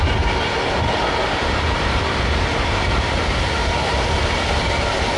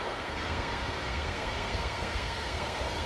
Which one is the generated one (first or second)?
second